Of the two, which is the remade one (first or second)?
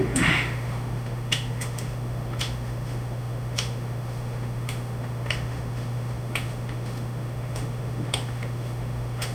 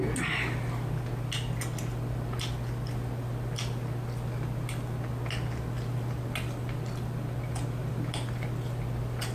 first